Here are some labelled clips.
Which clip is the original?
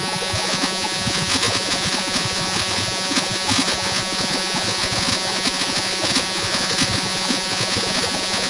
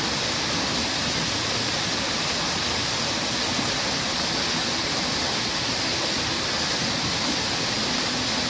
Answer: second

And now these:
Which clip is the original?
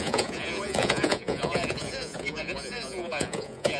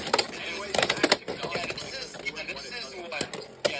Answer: second